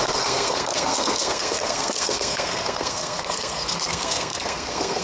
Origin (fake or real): fake